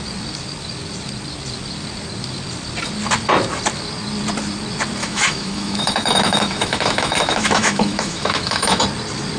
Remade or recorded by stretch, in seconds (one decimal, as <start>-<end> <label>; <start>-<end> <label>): 0.0-5.0 recorded; 5.0-8.8 remade; 8.8-9.4 recorded